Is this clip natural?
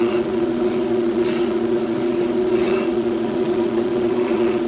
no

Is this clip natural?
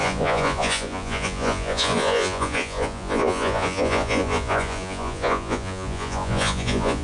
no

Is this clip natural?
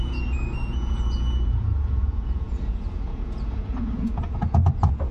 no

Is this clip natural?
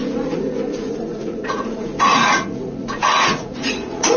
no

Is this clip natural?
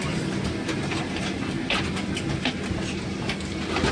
yes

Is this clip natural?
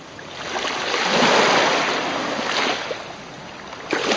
yes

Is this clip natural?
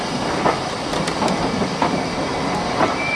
yes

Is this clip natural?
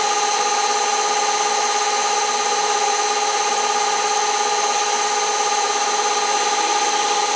yes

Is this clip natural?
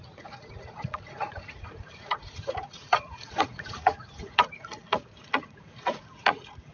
no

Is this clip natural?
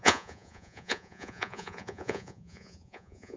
no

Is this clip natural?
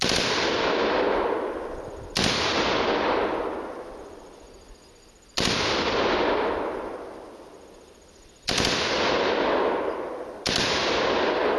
yes